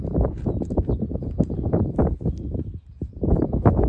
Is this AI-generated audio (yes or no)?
no